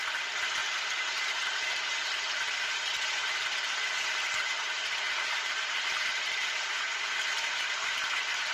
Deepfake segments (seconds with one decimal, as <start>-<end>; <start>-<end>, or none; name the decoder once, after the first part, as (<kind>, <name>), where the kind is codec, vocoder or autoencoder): none